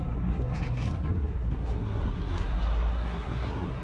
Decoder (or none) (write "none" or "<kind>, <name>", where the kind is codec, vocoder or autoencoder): codec, SNAC